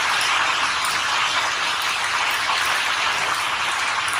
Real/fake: real